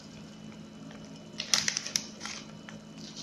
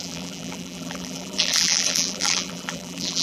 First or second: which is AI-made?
second